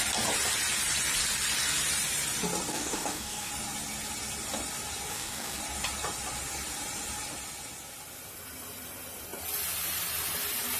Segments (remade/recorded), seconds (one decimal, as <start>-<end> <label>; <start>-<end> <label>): 0.0-2.7 recorded; 2.7-3.5 remade; 3.5-5.1 recorded; 5.1-5.6 remade; 5.6-10.8 recorded